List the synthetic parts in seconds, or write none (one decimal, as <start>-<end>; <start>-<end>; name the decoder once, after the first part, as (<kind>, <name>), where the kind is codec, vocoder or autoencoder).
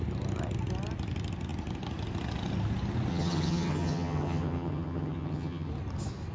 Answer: 3.1-5.7 (vocoder, HiFi-GAN)